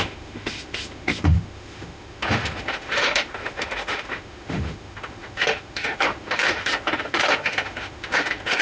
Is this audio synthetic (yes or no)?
yes